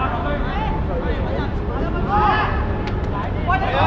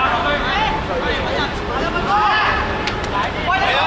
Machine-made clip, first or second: second